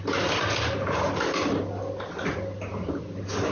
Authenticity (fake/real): real